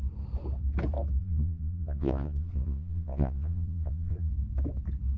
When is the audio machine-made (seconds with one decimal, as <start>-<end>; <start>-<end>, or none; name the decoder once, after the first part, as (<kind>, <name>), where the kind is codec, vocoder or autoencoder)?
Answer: 1.2-4.3 (vocoder, Vocos)